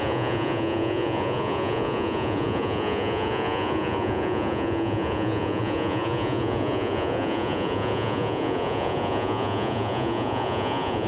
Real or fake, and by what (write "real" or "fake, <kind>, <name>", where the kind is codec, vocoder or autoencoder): fake, vocoder, Vocos